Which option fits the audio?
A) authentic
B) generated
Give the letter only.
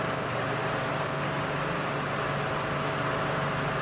A